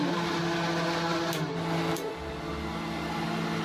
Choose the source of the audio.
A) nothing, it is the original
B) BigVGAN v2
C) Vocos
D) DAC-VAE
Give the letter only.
A